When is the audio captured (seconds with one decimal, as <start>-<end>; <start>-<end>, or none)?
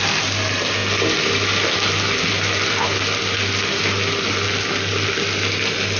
0.0-6.0